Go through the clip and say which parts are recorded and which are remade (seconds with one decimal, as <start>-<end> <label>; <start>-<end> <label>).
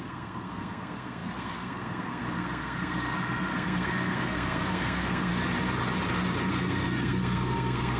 0.0-5.3 remade; 5.3-6.5 recorded; 6.5-8.0 remade